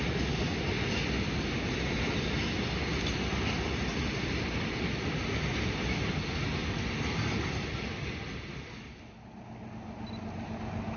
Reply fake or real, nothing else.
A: real